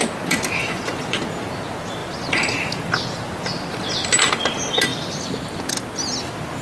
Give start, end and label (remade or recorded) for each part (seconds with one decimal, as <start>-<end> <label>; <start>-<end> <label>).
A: 0.0-0.6 recorded; 0.6-1.2 remade; 1.2-6.6 recorded